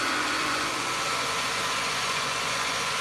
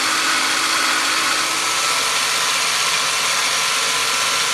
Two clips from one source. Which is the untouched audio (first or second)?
second